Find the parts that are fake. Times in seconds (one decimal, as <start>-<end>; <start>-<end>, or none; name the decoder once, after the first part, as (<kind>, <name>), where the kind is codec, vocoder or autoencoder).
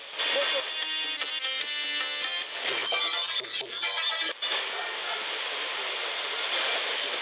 none